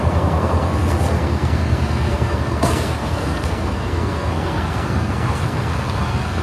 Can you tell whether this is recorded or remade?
remade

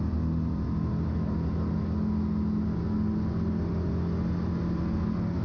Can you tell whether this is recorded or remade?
recorded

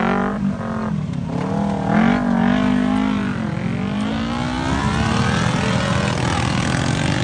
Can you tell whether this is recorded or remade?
recorded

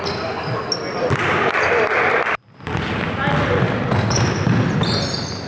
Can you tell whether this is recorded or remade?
recorded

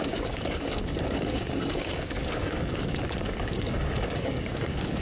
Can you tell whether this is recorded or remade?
remade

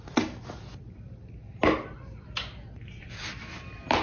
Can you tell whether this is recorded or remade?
recorded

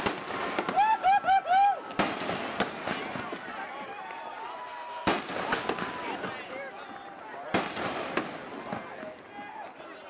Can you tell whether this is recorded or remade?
recorded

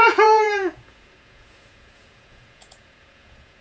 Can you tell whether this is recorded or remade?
remade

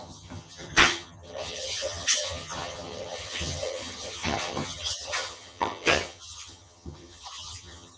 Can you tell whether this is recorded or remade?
remade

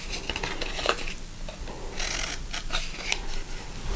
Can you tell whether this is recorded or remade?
recorded